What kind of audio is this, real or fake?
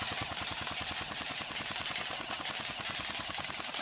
real